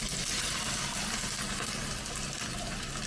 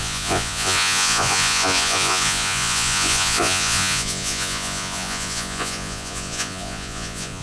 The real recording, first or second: first